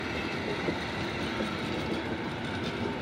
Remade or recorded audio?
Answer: recorded